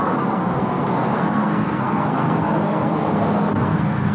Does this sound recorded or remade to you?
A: remade